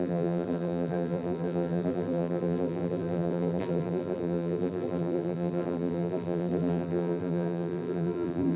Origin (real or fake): fake